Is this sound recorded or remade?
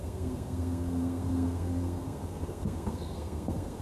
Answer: remade